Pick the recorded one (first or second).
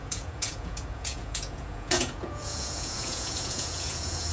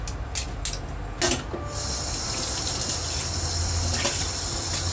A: second